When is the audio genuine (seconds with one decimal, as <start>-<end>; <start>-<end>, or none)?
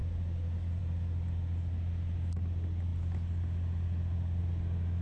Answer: 0.0-5.0